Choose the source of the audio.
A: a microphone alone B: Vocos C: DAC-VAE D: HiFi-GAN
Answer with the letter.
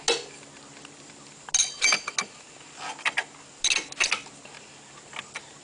A